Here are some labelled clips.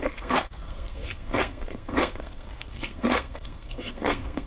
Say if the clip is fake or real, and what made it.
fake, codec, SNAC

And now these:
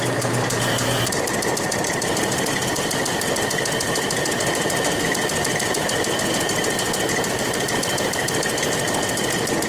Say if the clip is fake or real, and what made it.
real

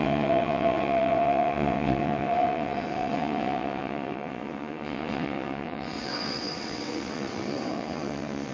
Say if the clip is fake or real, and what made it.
fake, vocoder, WaveNeXt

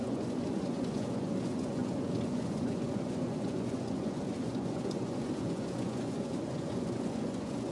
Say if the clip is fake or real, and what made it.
fake, vocoder, Vocos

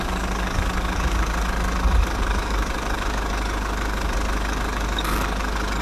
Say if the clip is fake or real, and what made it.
fake, codec, DAC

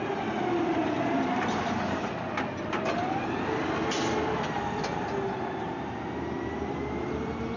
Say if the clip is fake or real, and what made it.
real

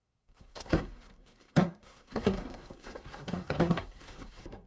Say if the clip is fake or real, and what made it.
fake, codec, SNAC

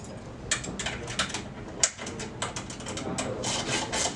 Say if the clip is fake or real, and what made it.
real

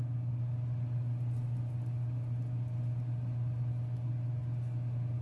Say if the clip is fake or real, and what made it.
real